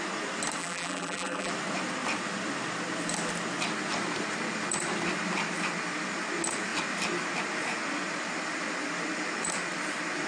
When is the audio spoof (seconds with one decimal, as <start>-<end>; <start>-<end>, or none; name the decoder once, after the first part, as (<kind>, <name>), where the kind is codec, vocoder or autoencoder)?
0.6-1.5 (vocoder, BigVGAN v2)